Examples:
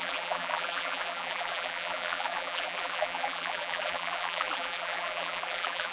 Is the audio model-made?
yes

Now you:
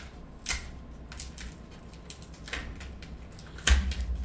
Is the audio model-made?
no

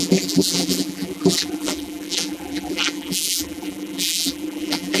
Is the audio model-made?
yes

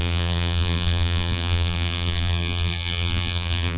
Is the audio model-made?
yes